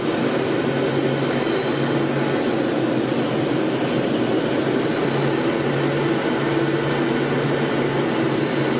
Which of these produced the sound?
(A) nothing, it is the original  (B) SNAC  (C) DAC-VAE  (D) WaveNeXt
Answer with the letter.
A